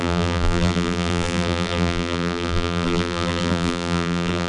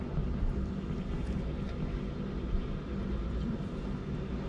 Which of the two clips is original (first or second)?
second